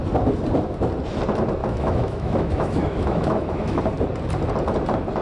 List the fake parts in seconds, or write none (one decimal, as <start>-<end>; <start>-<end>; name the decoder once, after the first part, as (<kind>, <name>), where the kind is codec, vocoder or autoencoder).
1.6-3.8 (autoencoder, DAC-VAE)